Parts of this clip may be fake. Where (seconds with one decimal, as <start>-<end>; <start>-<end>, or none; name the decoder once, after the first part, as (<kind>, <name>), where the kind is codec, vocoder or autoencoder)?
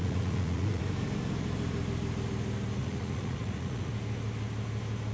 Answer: 0.0-0.8 (vocoder, Vocos); 2.8-3.9